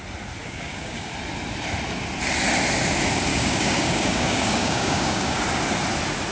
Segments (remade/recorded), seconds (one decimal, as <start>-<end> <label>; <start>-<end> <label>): 0.0-0.4 recorded; 0.4-1.1 remade; 1.1-3.3 recorded; 3.3-5.4 remade; 5.4-6.3 recorded